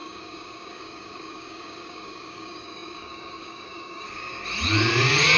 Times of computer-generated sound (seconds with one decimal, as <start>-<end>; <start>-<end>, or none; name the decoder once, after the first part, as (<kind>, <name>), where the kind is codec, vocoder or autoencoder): 0.0-4.3 (codec, DAC)